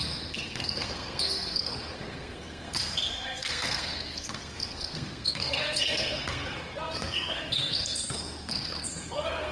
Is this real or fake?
fake